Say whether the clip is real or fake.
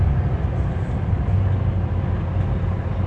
real